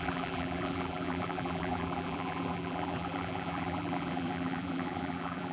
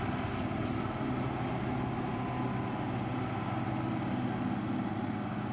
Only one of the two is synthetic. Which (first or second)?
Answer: first